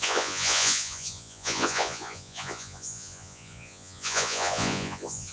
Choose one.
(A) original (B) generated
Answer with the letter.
B